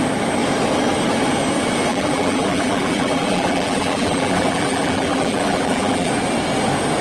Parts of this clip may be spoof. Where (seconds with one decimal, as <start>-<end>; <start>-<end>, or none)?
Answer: 1.9-6.1